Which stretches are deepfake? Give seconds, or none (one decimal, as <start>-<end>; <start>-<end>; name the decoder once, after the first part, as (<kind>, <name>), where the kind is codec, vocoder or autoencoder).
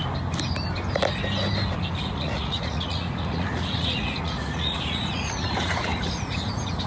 2.0-6.9 (vocoder, Vocos)